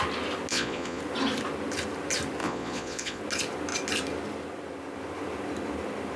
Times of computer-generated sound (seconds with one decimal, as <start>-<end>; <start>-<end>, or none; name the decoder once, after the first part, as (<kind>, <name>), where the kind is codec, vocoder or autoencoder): 0.5-1.0 (vocoder, Vocos); 2.4-3.2